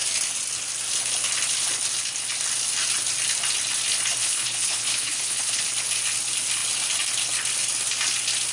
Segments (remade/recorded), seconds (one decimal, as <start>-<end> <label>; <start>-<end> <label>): 0.0-4.2 recorded; 4.2-5.6 remade; 5.6-8.5 recorded